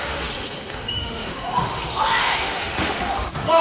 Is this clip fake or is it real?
fake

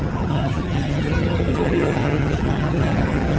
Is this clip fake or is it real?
fake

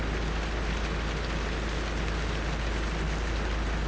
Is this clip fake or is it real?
real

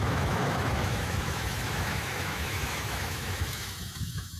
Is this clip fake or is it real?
fake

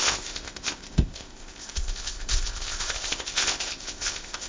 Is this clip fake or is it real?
fake